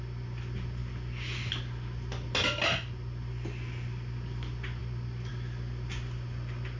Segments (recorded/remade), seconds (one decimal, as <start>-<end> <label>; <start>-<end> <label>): 0.0-6.8 recorded